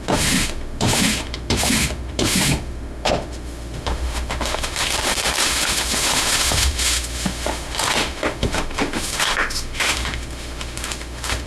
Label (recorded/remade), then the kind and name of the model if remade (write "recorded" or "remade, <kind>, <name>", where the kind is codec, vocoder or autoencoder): remade, autoencoder, DAC-VAE